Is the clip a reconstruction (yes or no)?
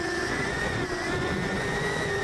yes